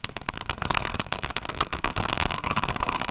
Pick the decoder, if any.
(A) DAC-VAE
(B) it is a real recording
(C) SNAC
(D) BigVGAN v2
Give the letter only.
C